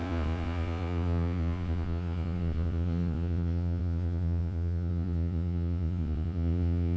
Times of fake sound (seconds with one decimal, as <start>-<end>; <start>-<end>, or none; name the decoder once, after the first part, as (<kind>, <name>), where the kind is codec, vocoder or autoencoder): 0.0-7.0 (vocoder, Vocos)